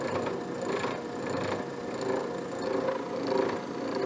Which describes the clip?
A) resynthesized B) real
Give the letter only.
B